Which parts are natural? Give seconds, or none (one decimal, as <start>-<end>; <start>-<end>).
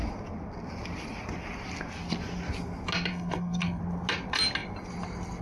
0.0-3.1; 3.8-5.4